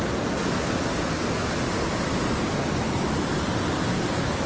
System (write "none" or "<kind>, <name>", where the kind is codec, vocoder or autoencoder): none